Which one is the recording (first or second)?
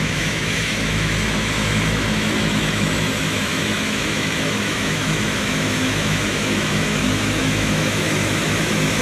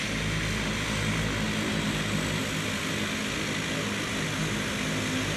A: second